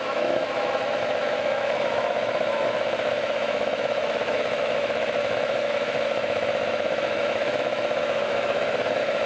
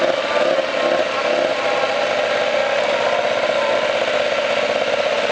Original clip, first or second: second